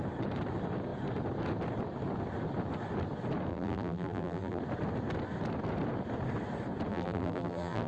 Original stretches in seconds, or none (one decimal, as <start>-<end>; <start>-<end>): 0.0-3.5; 4.6-6.9